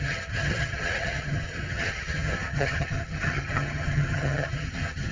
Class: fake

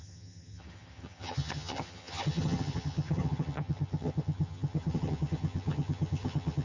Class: fake